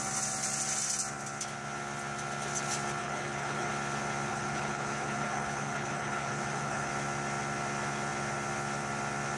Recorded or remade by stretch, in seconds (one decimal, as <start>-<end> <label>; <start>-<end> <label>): 0.0-3.0 recorded; 3.0-3.7 remade; 3.7-4.3 recorded; 4.3-6.9 remade; 6.9-9.4 recorded